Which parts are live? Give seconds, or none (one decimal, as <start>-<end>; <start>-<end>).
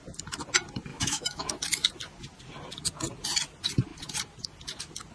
0.0-0.9; 1.5-5.1